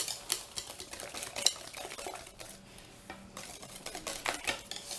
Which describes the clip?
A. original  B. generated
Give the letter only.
A